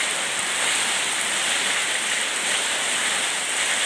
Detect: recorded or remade recorded